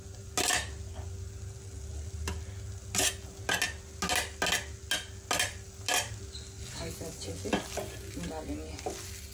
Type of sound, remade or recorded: recorded